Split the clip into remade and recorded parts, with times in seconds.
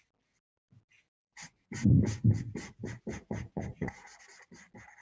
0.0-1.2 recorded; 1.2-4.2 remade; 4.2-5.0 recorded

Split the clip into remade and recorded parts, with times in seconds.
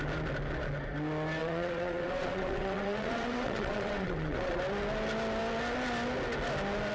0.0-1.4 recorded; 1.4-4.6 remade; 4.6-6.9 recorded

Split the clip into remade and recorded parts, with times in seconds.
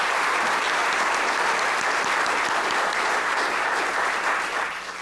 0.0-0.8 recorded; 0.8-1.4 remade; 1.4-5.0 recorded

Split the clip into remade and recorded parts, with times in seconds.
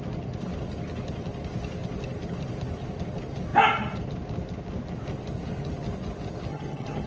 0.0-6.5 recorded; 6.5-7.1 remade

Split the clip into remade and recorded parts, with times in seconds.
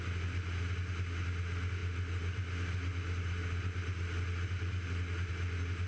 0.0-5.9 recorded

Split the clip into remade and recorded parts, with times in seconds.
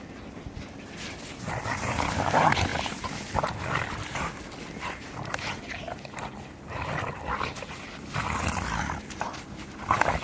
0.0-10.2 recorded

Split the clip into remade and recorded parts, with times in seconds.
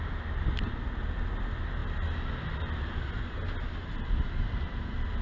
0.0-5.2 recorded